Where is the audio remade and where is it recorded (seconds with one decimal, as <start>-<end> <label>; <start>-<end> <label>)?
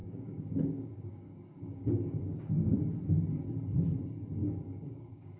0.0-2.8 remade; 2.8-4.4 recorded; 4.4-5.4 remade